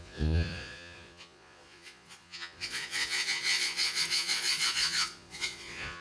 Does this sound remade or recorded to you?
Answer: remade